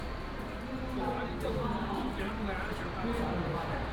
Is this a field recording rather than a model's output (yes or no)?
yes